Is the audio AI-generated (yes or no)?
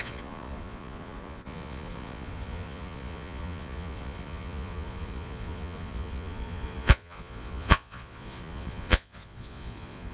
yes